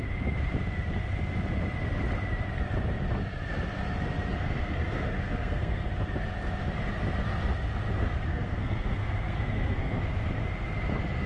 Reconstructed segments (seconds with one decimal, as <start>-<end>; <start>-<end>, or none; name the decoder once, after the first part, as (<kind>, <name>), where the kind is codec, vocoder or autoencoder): 4.3-5.9 (codec, SNAC); 8.3-10.0